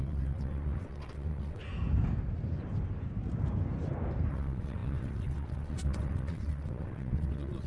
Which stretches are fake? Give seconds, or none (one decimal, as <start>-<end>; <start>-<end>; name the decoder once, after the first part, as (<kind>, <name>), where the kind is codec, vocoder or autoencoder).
0.0-1.6 (vocoder, WaveNeXt); 4.3-7.7